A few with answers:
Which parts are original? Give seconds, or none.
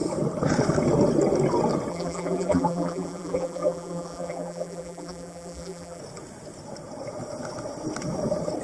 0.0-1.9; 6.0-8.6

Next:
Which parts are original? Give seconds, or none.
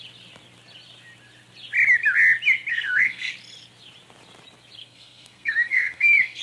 0.0-2.7; 3.3-4.8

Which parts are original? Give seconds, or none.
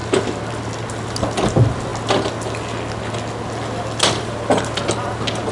0.0-5.5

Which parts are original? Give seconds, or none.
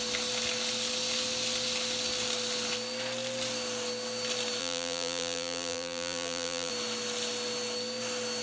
0.0-4.6; 6.7-8.4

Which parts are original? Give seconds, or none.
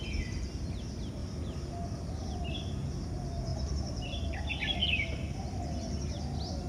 0.0-1.2; 1.7-3.5; 4.2-6.7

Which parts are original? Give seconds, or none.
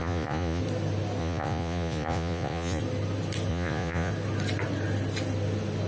0.6-1.2; 2.8-3.5; 4.1-5.9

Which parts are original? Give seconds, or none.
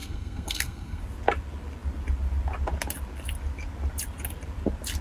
1.0-5.0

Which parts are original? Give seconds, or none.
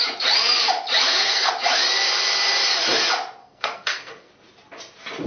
0.0-1.0; 1.5-3.4; 4.3-5.3